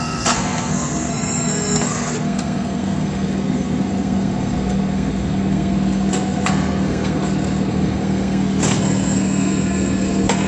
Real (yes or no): no